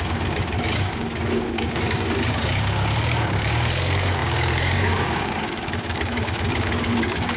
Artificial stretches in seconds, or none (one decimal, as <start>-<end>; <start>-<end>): 0.0-7.4